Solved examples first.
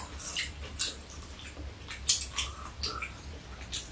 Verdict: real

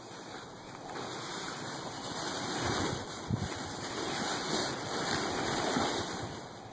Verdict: real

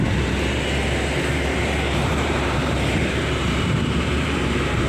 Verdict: fake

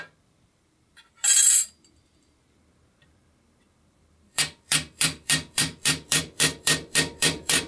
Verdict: fake